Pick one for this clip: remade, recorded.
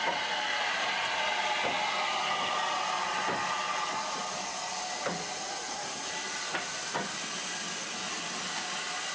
recorded